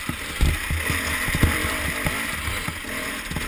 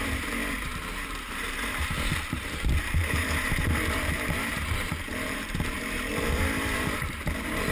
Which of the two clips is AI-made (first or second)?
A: second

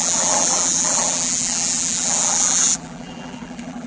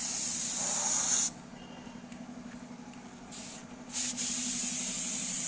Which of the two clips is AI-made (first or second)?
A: first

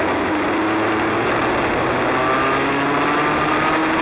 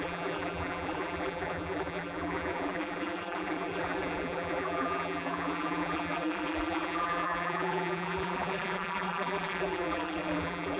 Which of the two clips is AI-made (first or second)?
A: second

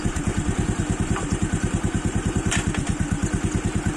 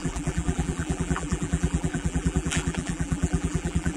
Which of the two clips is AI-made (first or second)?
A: second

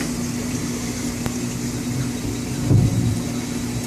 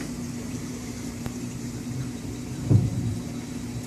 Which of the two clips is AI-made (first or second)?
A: second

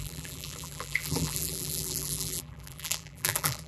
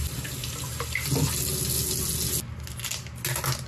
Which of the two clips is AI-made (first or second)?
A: first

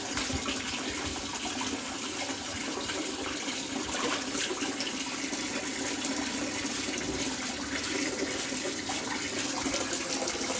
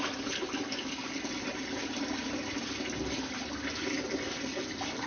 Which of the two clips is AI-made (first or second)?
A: first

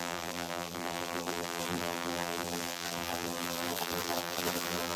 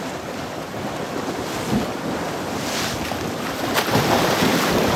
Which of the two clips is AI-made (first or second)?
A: first